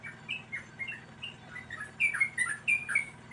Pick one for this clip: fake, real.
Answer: real